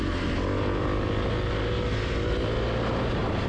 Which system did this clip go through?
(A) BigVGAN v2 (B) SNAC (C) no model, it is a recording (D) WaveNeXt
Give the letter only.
C